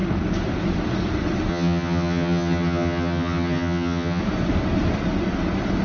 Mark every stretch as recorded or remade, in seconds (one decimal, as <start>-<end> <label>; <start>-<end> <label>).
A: 0.0-1.5 recorded; 1.5-4.2 remade; 4.2-5.8 recorded

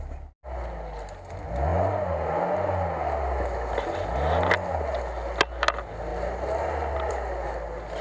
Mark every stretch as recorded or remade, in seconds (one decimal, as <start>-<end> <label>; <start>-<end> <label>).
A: 0.0-8.0 recorded